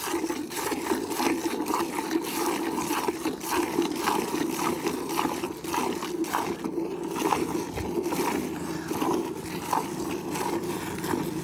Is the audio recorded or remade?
recorded